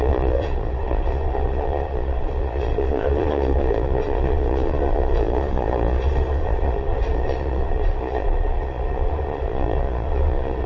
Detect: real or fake fake